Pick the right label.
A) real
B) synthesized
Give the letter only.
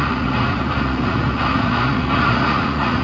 B